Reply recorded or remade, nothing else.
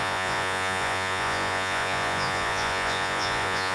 remade